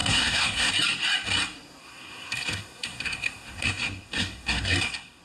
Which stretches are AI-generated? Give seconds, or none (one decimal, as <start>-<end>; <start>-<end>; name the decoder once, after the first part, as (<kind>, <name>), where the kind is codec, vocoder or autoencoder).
0.0-0.7 (codec, SNAC); 1.8-5.2